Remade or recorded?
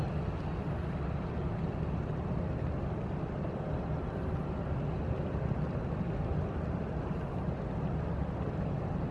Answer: recorded